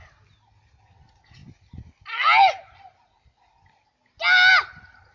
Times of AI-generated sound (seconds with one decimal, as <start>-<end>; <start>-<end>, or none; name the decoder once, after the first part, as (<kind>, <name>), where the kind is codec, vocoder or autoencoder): none